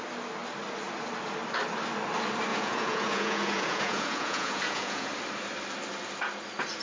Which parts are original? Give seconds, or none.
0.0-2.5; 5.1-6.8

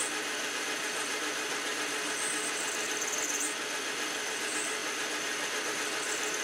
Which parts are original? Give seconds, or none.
0.0-6.4

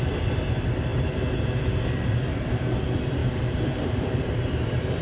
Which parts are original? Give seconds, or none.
0.0-3.2; 4.3-5.0

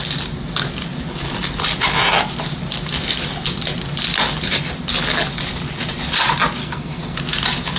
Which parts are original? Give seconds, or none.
0.0-6.6; 7.2-7.8